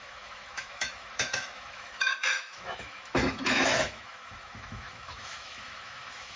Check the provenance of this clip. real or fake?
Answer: fake